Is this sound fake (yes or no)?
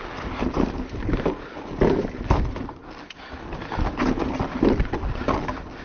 no